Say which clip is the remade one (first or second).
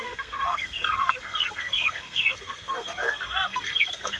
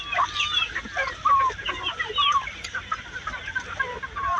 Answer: first